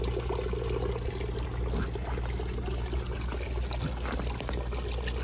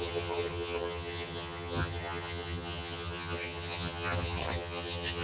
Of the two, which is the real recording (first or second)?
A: first